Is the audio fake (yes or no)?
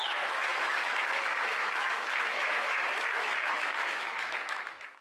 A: yes